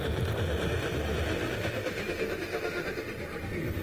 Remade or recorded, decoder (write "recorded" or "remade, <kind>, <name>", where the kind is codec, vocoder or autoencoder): recorded